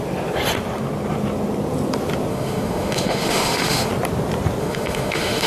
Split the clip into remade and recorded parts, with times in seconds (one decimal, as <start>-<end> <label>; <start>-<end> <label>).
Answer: 0.0-2.3 recorded; 2.3-3.9 remade; 3.9-4.6 recorded; 4.6-5.5 remade